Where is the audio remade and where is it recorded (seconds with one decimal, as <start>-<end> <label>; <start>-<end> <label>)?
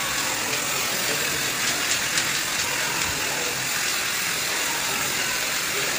0.0-3.9 recorded; 3.9-6.0 remade